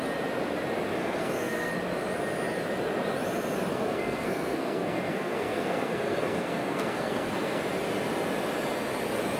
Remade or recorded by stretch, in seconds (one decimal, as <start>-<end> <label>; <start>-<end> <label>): 0.0-1.0 recorded; 1.0-1.7 remade; 1.7-3.7 recorded; 3.7-7.6 remade; 7.6-9.4 recorded